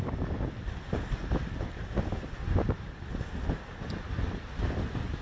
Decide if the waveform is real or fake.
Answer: real